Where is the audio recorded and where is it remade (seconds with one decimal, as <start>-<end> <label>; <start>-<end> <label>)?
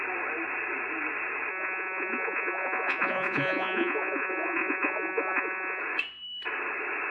0.0-1.5 recorded; 1.5-5.8 remade; 5.8-7.1 recorded